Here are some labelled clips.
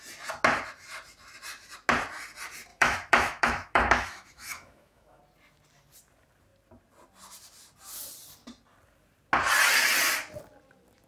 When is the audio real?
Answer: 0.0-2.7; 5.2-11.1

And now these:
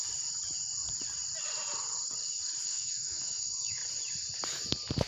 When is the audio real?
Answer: 0.0-2.6; 3.8-5.1

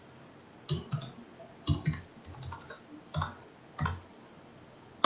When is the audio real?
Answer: 0.0-5.0

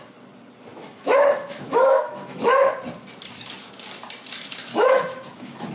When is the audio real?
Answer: 0.0-0.7; 2.7-4.7

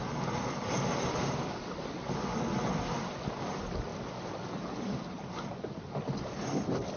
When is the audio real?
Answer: 0.0-7.0

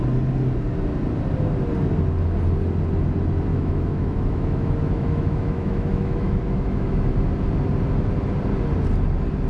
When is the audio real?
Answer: 0.0-3.5; 7.1-9.5

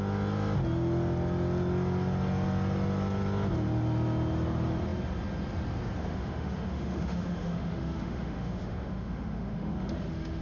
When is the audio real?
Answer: 0.0-6.0

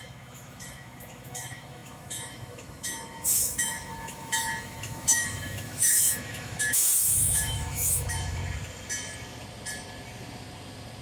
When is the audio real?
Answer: 8.4-11.0